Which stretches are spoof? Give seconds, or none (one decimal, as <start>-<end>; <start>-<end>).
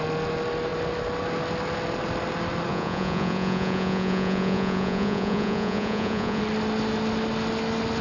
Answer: 2.7-6.4